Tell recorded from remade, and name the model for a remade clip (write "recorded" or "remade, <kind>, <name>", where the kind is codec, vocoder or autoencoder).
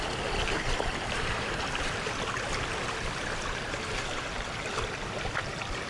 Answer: recorded